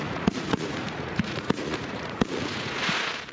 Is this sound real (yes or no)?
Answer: no